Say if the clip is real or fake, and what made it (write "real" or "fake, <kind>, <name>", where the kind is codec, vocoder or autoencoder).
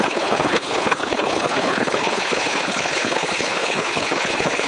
fake, codec, HILCodec